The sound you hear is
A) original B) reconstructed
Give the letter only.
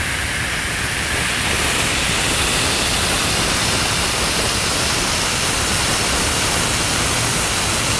A